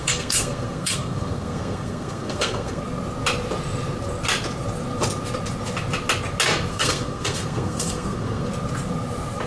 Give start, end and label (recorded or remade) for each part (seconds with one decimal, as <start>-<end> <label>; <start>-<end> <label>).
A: 0.0-2.8 remade; 2.8-6.7 recorded; 6.7-8.5 remade; 8.5-9.5 recorded